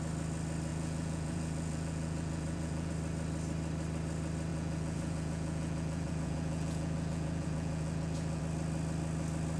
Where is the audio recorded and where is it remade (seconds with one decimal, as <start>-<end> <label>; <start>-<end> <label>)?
0.0-0.7 recorded; 0.7-2.9 remade; 2.9-4.5 recorded; 4.5-8.4 remade; 8.4-9.6 recorded